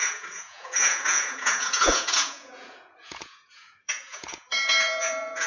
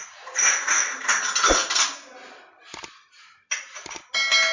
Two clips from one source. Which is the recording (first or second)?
second